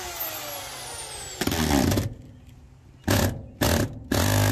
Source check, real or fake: real